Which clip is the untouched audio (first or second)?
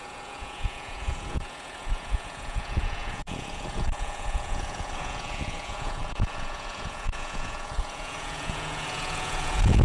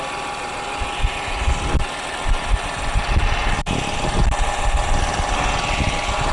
second